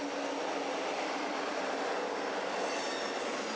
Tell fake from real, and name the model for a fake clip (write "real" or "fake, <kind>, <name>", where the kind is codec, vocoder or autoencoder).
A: real